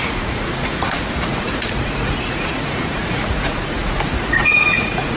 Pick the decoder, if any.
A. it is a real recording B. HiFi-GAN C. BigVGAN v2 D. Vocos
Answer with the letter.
D